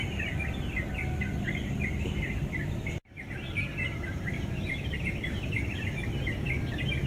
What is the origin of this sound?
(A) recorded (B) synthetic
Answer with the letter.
B